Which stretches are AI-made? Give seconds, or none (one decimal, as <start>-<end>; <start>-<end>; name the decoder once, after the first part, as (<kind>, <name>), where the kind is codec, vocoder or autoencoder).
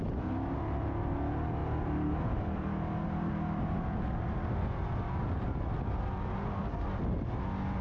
none